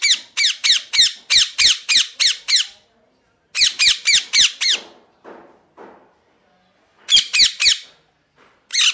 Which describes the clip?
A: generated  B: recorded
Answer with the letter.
B